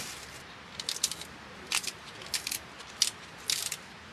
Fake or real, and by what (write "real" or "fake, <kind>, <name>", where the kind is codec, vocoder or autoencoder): real